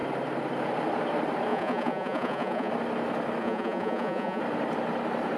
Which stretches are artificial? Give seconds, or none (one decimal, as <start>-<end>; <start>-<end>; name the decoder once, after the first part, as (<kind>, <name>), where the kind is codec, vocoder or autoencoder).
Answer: 1.5-2.7 (vocoder, Vocos); 3.4-4.4